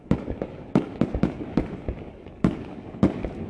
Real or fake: fake